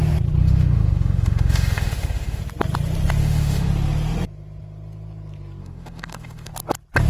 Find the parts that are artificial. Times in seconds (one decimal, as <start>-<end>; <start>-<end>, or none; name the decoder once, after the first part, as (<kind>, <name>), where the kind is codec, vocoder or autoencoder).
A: 0.4-2.4 (autoencoder, DAC-VAE); 3.2-3.7; 5.6-6.5